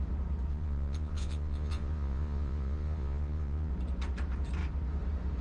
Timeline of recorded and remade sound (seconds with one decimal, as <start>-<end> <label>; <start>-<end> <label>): 0.0-0.5 recorded; 0.5-3.7 remade; 3.7-5.4 recorded